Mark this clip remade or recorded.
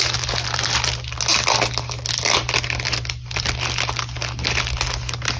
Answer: recorded